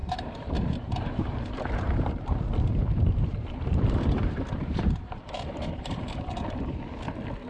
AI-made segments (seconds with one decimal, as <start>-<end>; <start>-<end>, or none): 0.0-2.4; 2.8-5.7